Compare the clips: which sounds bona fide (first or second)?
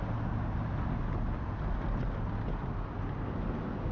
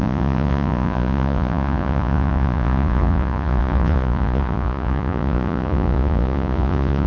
first